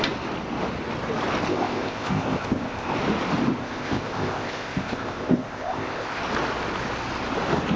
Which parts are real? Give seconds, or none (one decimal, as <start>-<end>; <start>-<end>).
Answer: 0.0-1.5; 2.9-3.6; 6.2-7.8